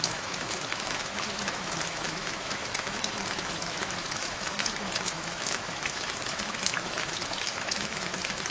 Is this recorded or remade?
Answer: remade